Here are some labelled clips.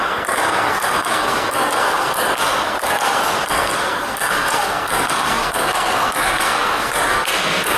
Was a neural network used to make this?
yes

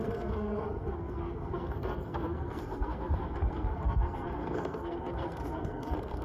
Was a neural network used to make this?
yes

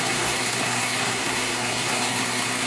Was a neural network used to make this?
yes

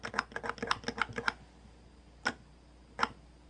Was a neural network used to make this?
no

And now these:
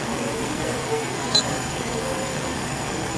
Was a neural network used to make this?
yes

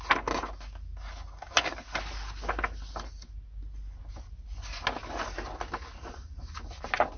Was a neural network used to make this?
no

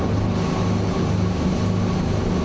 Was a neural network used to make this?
no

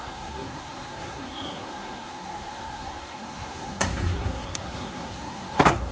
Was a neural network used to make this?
yes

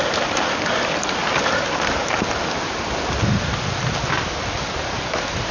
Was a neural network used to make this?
no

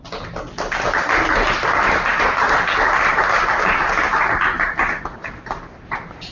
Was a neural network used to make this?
no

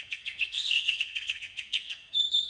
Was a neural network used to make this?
yes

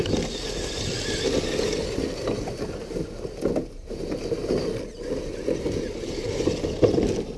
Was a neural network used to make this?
no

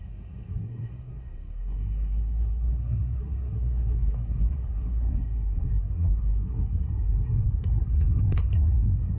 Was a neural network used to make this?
yes